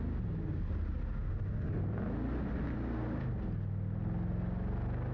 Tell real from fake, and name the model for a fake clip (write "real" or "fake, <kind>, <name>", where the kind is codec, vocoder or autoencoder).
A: real